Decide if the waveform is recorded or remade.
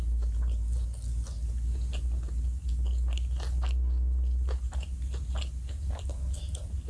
recorded